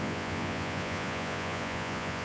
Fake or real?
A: fake